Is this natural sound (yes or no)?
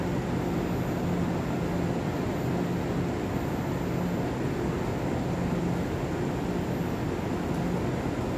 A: yes